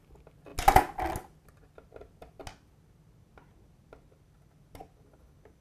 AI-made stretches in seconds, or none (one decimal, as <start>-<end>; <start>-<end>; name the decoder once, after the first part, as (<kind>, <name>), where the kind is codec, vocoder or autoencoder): none